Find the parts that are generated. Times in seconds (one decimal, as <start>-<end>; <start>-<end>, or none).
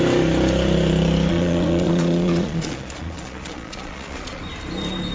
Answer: 1.3-4.4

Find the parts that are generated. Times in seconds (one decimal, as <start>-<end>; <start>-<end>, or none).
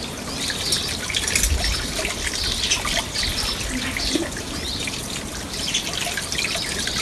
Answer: none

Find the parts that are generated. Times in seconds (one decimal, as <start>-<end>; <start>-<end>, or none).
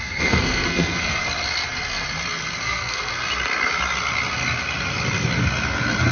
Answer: 0.0-1.2; 2.6-3.1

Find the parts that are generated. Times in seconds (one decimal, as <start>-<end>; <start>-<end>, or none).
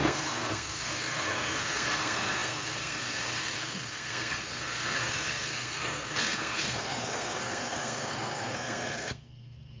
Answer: 0.0-9.8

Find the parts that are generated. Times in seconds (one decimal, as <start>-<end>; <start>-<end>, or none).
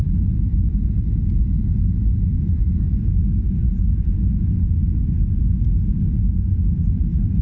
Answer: none